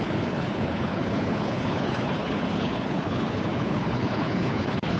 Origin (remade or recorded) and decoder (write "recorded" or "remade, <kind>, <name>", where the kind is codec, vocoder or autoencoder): remade, codec, HILCodec